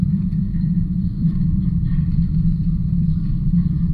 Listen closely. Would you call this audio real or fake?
fake